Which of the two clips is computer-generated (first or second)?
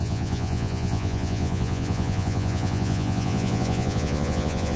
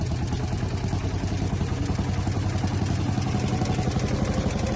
first